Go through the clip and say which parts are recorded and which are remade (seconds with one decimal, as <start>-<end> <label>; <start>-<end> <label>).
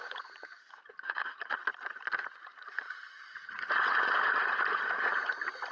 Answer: 0.0-1.6 remade; 1.6-2.5 recorded; 2.5-5.3 remade; 5.3-5.7 recorded